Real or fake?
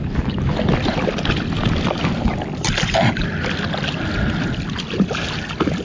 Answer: real